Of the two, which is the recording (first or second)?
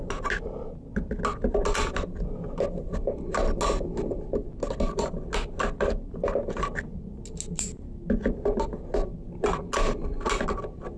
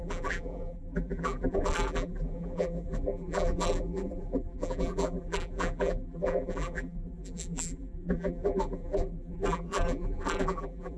first